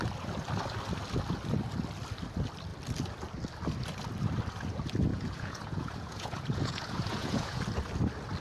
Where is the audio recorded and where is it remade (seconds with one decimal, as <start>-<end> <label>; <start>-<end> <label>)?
0.0-5.1 recorded; 5.1-7.6 remade; 7.6-8.4 recorded